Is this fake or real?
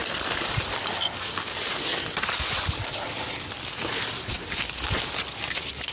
real